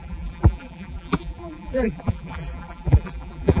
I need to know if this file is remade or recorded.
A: remade